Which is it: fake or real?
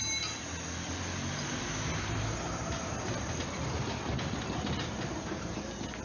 real